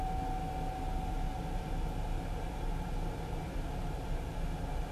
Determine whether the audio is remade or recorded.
recorded